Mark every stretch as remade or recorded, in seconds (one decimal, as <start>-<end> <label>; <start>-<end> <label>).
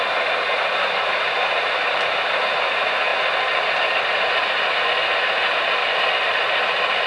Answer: 0.0-3.1 remade; 3.1-4.1 recorded; 4.1-5.8 remade; 5.8-7.1 recorded